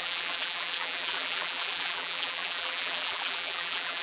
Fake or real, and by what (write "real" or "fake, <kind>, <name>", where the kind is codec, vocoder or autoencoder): fake, vocoder, BigVGAN v2